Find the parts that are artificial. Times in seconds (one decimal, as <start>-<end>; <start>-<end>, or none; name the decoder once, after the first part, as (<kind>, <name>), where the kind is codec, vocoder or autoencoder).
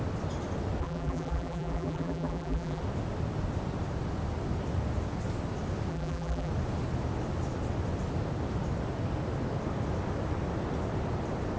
0.8-2.8 (vocoder, BigVGAN v2); 5.9-6.5